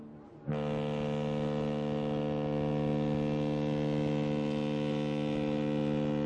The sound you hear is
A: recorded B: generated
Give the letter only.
A